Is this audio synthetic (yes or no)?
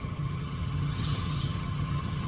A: yes